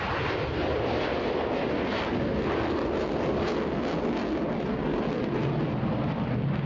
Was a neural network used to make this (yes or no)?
no